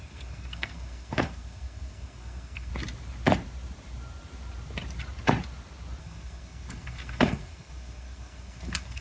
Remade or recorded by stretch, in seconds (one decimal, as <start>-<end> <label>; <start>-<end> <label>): 0.0-2.7 remade; 2.7-6.0 recorded; 6.0-9.0 remade